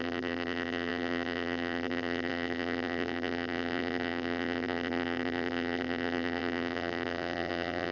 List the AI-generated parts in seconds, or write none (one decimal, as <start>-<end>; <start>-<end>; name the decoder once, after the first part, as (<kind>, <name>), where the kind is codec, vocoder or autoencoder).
0.0-7.9 (vocoder, BigVGAN v2)